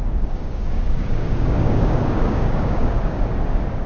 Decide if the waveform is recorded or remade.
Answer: remade